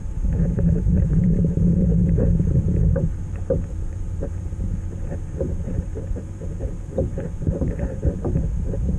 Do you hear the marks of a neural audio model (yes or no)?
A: yes